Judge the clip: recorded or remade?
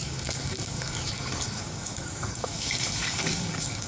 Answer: remade